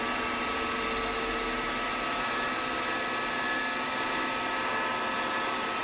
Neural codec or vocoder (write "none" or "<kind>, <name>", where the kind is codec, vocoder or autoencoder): none